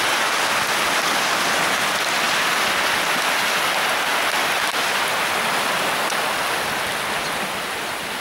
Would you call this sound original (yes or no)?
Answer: yes